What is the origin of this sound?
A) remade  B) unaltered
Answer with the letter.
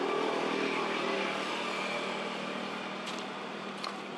B